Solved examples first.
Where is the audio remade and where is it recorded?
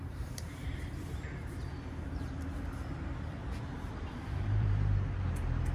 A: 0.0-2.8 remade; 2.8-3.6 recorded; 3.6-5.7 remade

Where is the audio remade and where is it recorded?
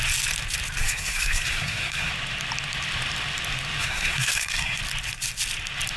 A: 0.0-0.8 recorded; 0.8-2.1 remade; 2.1-3.8 recorded; 3.8-4.8 remade; 4.8-6.0 recorded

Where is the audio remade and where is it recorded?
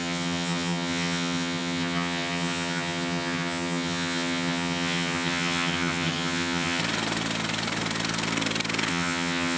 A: 0.0-6.8 remade; 6.8-8.9 recorded; 8.9-9.6 remade